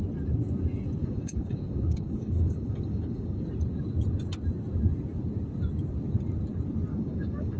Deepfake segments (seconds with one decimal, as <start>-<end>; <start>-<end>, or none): 1.0-3.4; 6.9-7.6